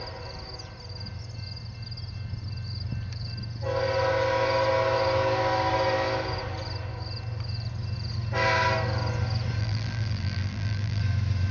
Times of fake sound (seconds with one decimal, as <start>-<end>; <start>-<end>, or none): 9.6-11.0